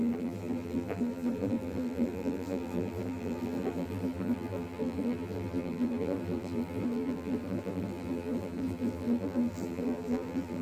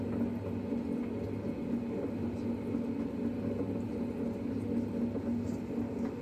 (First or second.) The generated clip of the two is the first